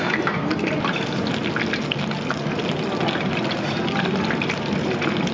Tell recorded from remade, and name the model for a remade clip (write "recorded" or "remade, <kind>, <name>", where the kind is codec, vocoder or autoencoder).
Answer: recorded